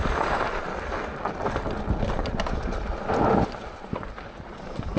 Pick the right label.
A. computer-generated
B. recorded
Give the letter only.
B